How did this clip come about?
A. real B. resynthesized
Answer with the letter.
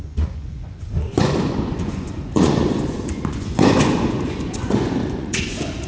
B